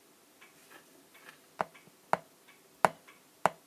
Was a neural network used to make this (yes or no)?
no